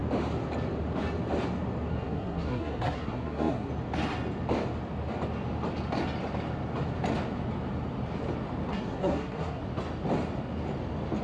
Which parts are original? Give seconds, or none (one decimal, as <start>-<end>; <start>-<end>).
0.0-1.9; 3.7-8.7; 9.6-11.2